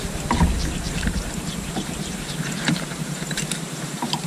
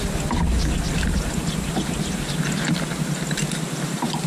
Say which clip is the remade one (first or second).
first